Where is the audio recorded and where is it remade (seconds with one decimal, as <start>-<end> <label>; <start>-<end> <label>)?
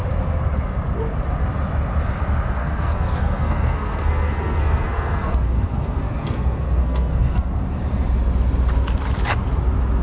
0.0-2.6 recorded; 2.6-7.5 remade; 7.5-10.0 recorded